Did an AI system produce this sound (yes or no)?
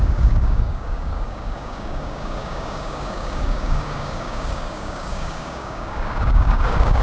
yes